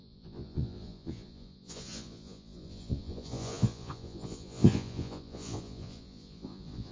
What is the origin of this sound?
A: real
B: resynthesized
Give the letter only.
B